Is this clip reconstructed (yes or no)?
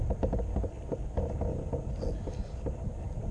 no